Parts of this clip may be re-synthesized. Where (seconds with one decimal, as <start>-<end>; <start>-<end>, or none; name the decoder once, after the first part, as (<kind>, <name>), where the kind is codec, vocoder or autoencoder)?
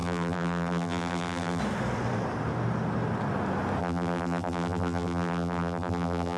0.0-1.6 (vocoder, BigVGAN v2); 3.8-6.4